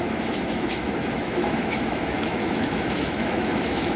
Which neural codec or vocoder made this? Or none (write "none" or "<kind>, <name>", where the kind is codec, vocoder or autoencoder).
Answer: autoencoder, DAC-VAE